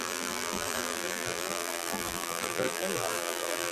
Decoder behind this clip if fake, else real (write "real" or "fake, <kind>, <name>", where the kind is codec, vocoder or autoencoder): fake, vocoder, BigVGAN v2